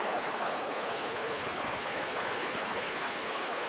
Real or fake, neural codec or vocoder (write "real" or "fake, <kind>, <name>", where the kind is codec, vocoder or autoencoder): fake, codec, HILCodec